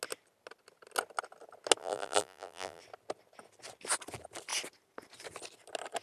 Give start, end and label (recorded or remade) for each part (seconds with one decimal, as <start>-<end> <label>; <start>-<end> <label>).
0.0-1.8 recorded; 1.8-2.8 remade; 2.8-6.0 recorded